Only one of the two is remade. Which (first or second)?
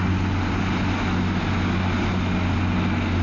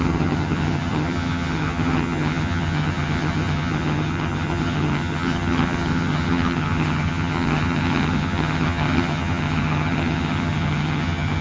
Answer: second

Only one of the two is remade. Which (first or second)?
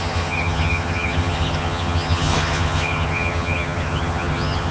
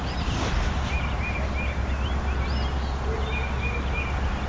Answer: first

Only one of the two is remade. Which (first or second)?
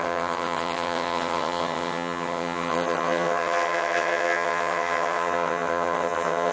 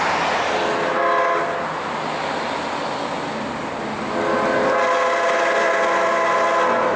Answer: first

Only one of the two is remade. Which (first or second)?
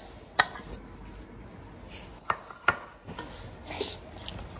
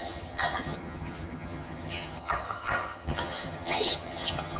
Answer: second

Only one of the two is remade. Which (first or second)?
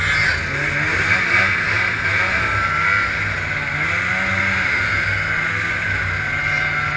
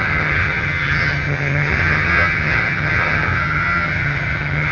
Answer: second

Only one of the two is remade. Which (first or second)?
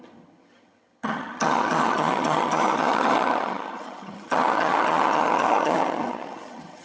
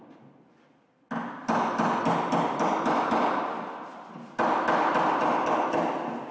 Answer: first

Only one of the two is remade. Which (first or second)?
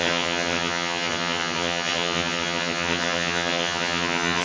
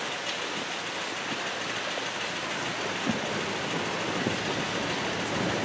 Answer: first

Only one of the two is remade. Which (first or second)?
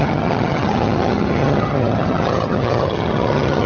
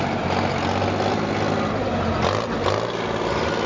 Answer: first